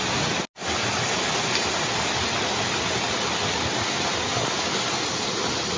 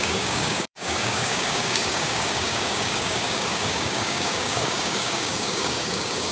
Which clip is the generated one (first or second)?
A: second